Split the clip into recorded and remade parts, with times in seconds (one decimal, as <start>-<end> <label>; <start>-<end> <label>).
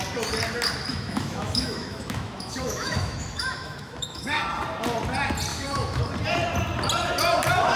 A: 0.0-0.9 recorded; 0.9-4.4 remade; 4.4-5.5 recorded; 5.5-6.0 remade; 6.0-7.8 recorded